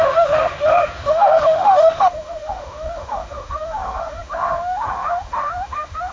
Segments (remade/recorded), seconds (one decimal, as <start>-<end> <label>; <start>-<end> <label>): 0.0-6.1 remade